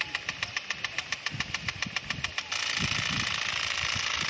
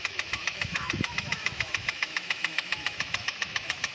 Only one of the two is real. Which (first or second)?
first